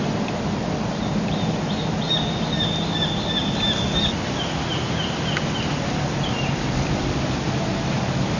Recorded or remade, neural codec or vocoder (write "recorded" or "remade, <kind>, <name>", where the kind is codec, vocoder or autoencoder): recorded